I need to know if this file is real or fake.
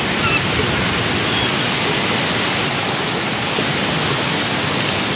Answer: real